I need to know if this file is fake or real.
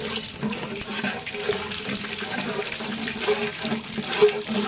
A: real